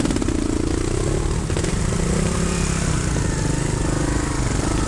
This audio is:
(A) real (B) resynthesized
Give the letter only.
A